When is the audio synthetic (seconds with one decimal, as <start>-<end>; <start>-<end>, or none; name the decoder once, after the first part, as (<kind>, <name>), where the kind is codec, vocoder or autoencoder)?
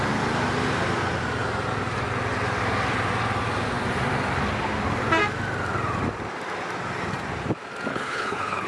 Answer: 7.9-8.7 (codec, HILCodec)